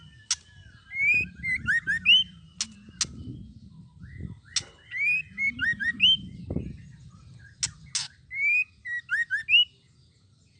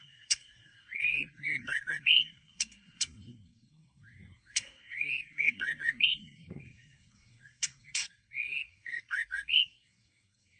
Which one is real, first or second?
first